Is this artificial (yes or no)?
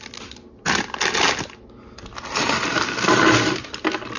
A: no